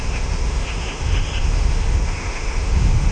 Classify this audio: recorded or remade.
remade